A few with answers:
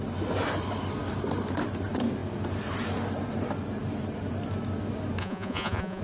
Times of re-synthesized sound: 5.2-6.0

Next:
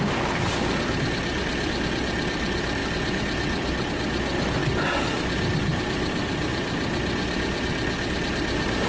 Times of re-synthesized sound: none

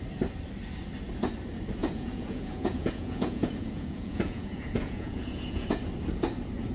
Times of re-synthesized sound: 1.8-5.8

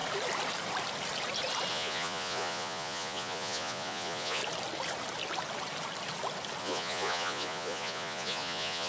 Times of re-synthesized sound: 1.7-4.4; 6.6-8.9

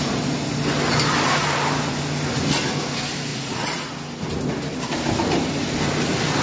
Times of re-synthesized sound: 3.3-3.9

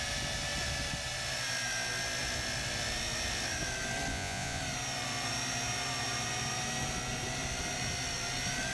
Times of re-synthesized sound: 4.1-4.6

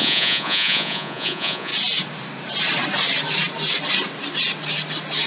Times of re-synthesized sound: 0.0-1.7

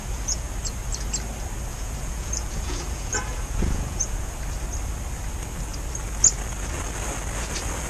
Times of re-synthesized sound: 0.0-0.5; 1.7-4.3